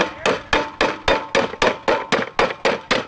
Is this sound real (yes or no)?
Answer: yes